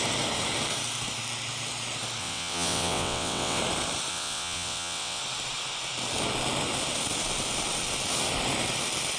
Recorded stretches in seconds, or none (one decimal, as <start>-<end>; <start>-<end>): 0.0-2.2; 3.6-4.1; 5.2-9.2